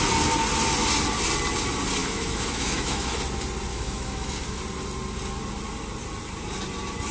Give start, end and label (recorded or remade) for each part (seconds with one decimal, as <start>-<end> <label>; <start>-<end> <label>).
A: 0.0-2.0 recorded; 2.0-3.1 remade; 3.1-3.7 recorded; 3.7-4.6 remade; 4.6-7.1 recorded